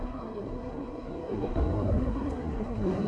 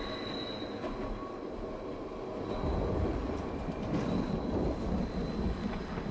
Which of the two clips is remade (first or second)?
first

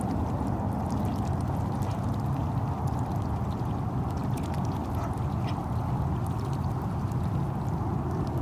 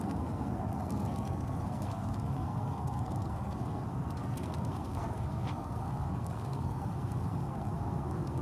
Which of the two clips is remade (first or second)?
second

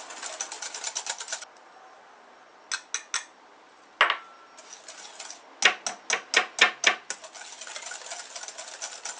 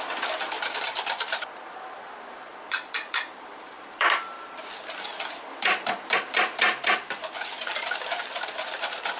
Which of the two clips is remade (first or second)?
second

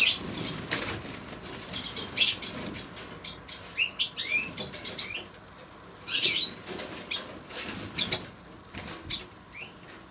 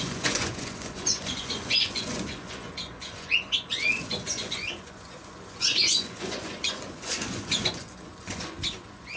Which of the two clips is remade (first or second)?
second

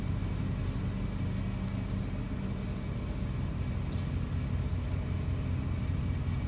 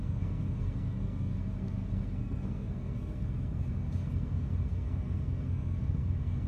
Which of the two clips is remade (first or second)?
second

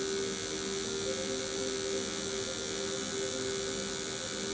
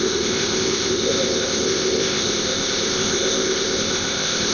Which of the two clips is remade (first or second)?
second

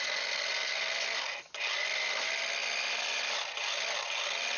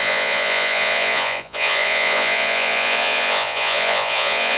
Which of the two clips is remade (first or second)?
second